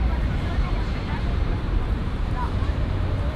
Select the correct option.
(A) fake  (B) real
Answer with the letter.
A